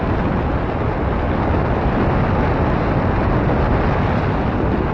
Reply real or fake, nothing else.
real